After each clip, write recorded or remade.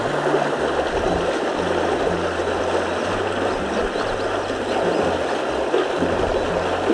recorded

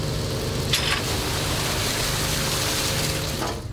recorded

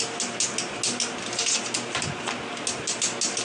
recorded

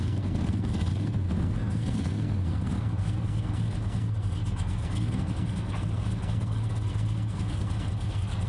remade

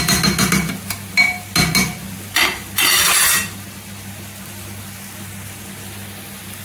recorded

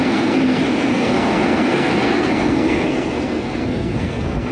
remade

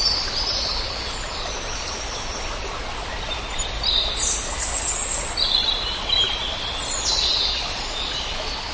recorded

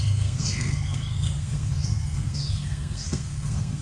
remade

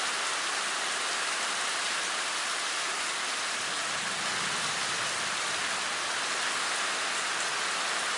recorded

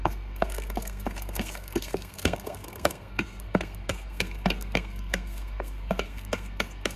remade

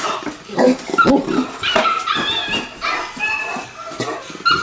recorded